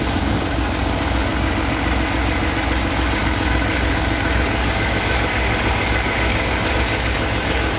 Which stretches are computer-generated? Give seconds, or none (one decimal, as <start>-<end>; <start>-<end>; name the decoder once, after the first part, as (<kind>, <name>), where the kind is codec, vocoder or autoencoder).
0.0-1.3 (codec, DAC); 3.2-7.8